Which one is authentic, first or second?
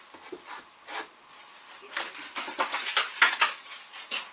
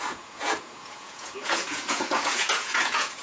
first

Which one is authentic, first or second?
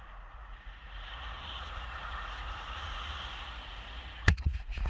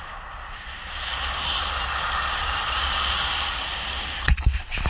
second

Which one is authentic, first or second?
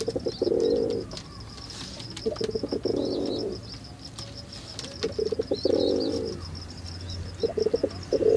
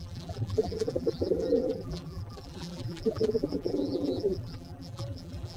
first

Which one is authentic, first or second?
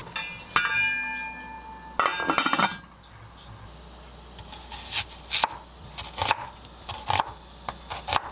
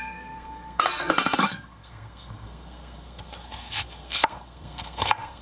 first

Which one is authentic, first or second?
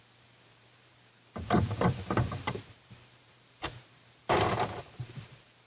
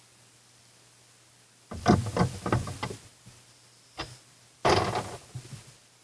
second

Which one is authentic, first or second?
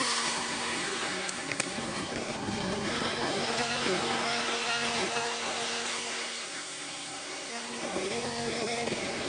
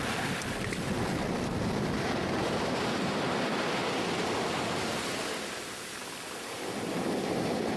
second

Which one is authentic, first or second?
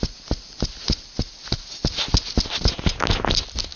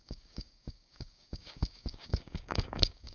first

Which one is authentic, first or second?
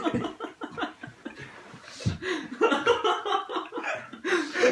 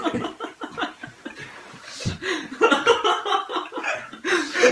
first